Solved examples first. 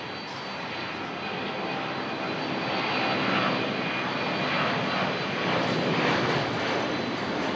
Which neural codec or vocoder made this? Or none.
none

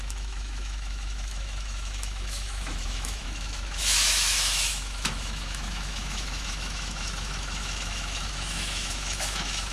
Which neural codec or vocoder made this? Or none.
autoencoder, DAC-VAE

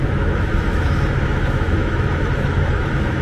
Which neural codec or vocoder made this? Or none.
autoencoder, DAC-VAE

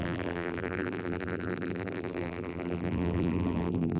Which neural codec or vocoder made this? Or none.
vocoder, BigVGAN v2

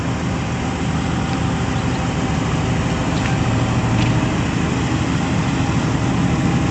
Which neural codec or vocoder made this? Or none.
none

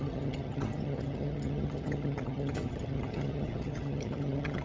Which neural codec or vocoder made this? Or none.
vocoder, HiFi-GAN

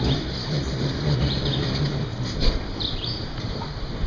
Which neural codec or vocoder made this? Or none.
vocoder, BigVGAN v2